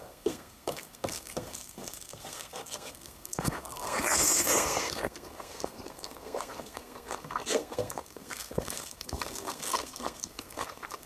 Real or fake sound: fake